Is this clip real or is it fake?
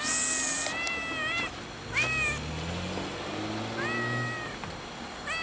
real